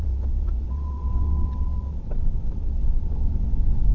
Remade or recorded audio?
remade